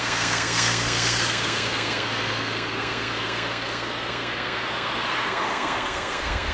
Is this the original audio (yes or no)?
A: no